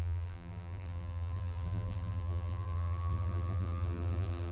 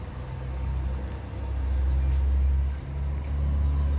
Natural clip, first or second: second